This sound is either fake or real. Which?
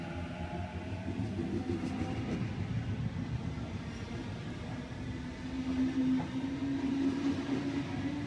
real